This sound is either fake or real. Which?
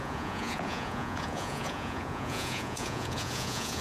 fake